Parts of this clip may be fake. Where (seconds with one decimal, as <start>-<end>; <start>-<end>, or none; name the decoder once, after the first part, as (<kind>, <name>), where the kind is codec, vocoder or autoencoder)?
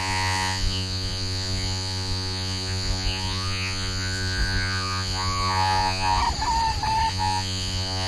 0.0-6.2 (vocoder, Vocos); 7.1-8.1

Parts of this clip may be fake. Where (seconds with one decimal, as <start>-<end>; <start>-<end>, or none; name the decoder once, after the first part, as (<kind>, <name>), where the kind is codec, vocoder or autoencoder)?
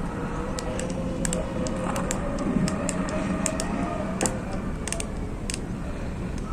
1.8-3.5 (vocoder, BigVGAN v2)